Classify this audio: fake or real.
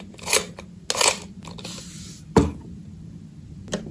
real